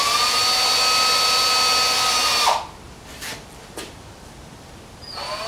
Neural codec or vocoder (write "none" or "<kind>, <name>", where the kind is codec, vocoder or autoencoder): none